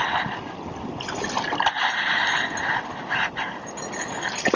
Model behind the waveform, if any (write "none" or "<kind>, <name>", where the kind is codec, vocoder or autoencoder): none